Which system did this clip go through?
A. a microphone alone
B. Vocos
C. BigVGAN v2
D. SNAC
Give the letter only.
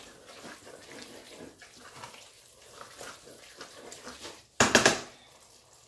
A